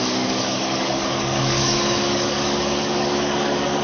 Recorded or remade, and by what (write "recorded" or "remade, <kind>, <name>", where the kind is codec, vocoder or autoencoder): remade, codec, DAC